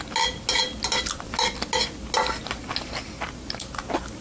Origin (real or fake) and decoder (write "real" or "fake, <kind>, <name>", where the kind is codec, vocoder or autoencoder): real